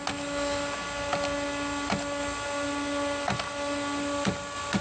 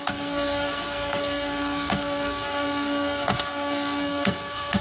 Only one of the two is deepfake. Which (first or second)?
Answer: second